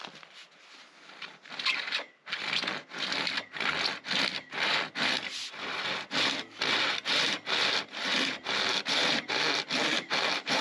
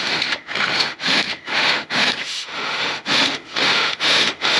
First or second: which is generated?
second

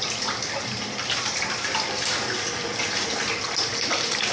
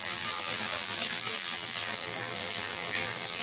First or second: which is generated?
second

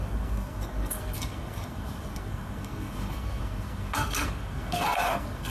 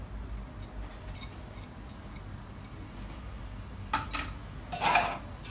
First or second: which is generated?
first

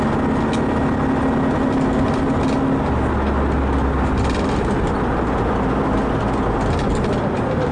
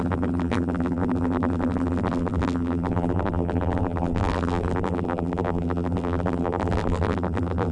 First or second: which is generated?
second